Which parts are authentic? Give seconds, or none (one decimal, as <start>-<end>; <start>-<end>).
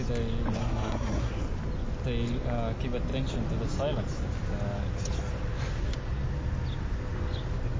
0.0-0.6; 1.3-7.8